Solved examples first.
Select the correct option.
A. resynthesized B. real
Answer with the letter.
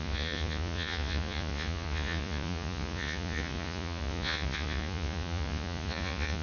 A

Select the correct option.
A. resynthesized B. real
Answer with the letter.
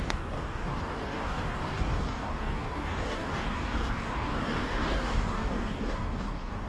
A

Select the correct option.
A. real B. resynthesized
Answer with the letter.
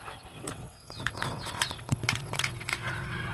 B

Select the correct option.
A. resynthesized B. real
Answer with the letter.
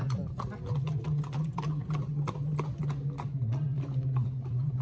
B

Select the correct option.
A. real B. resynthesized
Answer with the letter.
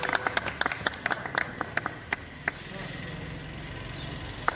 A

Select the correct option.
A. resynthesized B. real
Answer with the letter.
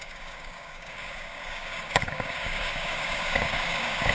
A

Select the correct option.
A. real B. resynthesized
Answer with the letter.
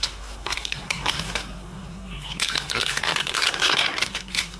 B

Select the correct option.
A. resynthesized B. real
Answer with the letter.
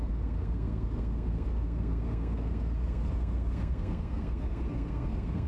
A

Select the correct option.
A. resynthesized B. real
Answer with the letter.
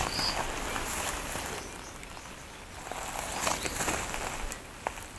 B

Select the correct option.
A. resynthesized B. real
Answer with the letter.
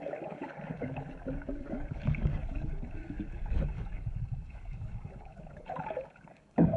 A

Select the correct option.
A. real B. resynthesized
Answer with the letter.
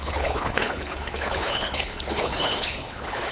B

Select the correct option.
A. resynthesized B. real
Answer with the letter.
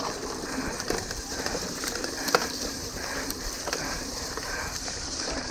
A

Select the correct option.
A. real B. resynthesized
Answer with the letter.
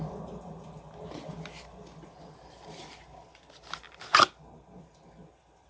A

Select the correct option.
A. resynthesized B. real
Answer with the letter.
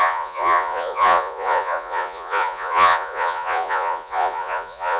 A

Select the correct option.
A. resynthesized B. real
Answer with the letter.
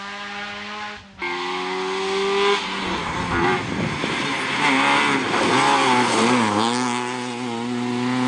B